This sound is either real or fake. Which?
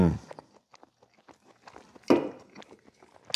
real